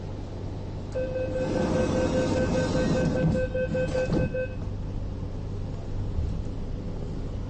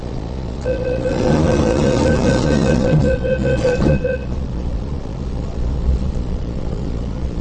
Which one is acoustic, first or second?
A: first